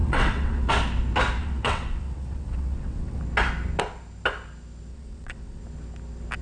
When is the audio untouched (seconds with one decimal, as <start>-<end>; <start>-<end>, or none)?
0.7-1.4; 3.2-4.9; 5.6-6.4